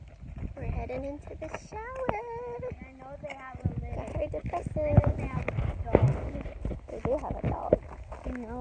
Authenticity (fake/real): real